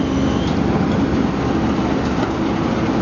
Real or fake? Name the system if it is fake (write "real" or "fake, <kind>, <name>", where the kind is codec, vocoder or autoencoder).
real